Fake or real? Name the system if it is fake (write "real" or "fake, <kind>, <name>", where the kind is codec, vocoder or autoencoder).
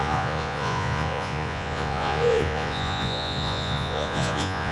fake, vocoder, Vocos